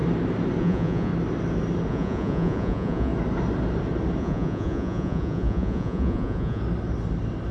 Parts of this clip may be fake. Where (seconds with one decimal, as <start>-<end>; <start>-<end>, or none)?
0.6-1.1; 1.9-3.1; 4.2-6.6